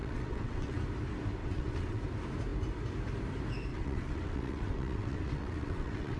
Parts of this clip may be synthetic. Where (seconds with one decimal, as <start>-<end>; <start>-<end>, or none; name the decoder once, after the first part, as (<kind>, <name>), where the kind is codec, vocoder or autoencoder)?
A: 0.0-0.8 (vocoder, WaveNeXt); 1.4-2.0; 3.7-6.2